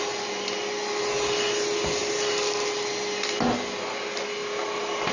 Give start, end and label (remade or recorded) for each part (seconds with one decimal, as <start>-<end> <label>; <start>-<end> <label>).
0.0-5.1 recorded